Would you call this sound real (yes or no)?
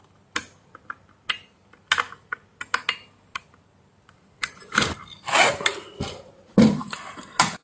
yes